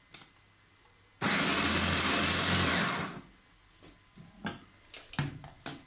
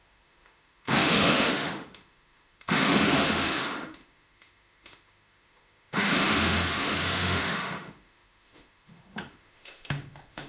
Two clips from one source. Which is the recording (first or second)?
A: first